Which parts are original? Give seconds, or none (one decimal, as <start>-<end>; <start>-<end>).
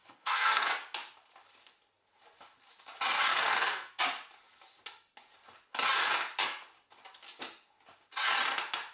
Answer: 0.7-3.5; 4.0-8.9